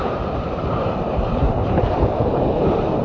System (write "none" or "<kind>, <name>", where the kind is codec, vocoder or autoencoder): vocoder, BigVGAN v2